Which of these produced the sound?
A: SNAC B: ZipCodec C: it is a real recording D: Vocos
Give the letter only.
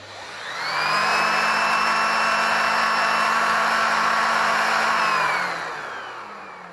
C